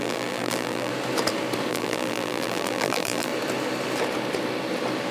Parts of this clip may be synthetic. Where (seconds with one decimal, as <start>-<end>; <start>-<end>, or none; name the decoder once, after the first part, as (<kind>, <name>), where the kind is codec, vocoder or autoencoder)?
0.0-0.9 (vocoder, BigVGAN v2); 1.7-3.3